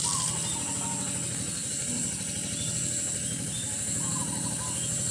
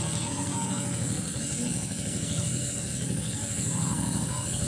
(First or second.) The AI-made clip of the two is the second